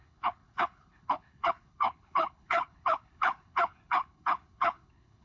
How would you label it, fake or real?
fake